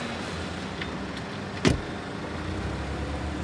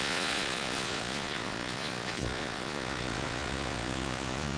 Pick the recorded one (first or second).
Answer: first